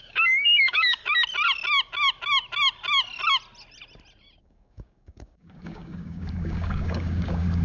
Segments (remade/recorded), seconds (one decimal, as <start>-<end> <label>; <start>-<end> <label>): 0.0-1.0 remade; 1.0-4.4 recorded; 4.4-7.6 remade